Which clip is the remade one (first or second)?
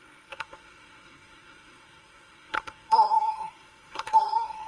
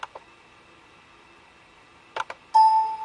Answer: first